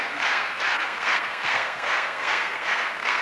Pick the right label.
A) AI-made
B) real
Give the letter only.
A